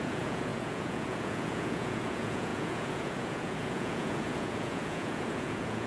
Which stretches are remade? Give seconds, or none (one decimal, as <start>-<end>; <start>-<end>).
0.0-5.9